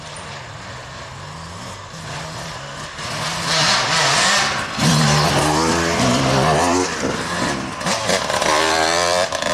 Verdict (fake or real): real